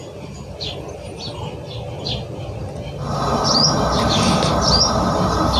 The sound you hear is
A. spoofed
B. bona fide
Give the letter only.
B